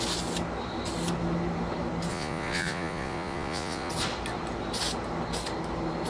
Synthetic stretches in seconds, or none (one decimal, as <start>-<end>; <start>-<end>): 2.1-3.9